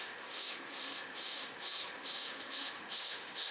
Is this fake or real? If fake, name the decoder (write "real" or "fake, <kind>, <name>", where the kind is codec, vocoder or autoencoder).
fake, autoencoder, DAC-VAE